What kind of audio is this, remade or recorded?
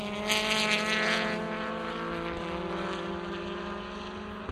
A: recorded